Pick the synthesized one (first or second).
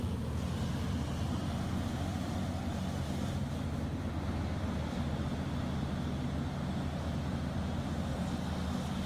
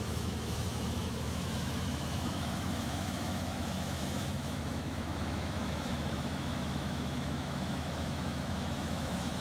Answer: second